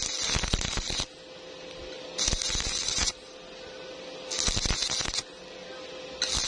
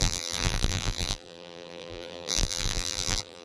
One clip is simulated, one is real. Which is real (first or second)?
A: first